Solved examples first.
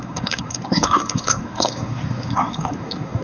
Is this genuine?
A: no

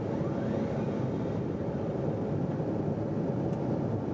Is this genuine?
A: yes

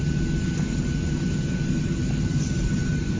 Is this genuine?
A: yes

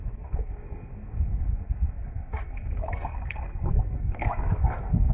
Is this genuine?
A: no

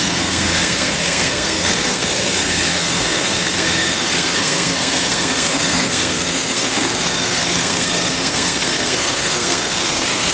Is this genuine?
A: no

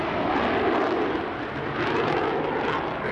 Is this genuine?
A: yes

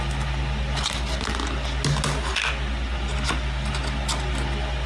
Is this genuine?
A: yes